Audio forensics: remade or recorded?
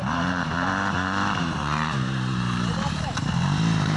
remade